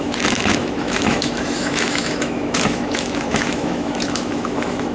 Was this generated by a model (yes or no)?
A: yes